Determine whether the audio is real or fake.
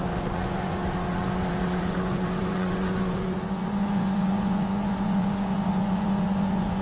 fake